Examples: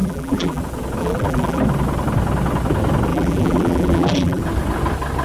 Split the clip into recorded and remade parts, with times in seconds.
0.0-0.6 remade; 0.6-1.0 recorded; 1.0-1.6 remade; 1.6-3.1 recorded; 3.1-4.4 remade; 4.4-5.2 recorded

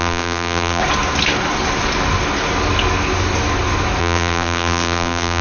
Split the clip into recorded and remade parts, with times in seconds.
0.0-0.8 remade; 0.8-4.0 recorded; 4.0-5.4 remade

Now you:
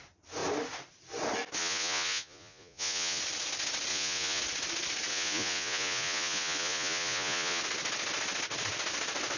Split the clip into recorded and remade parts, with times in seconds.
0.0-1.6 recorded; 1.6-3.2 remade; 3.2-3.9 recorded; 3.9-4.4 remade; 4.4-5.1 recorded; 5.1-7.6 remade; 7.6-9.4 recorded